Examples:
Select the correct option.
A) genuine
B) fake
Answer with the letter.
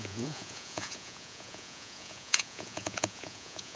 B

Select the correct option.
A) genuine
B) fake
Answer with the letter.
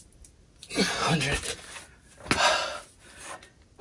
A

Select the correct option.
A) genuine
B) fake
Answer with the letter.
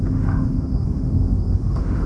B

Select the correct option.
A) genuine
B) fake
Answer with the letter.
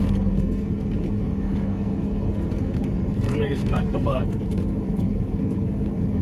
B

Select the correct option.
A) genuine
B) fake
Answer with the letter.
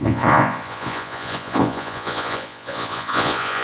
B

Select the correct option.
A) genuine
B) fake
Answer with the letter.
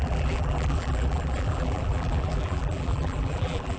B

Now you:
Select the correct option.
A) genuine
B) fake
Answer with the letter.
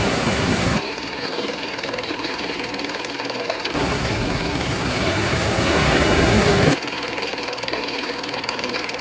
B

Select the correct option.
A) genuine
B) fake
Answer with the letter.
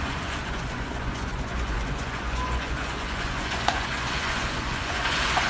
B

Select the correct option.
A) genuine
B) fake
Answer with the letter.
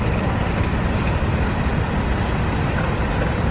A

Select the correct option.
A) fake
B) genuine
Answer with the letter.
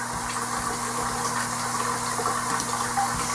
B